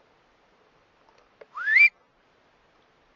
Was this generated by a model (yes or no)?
no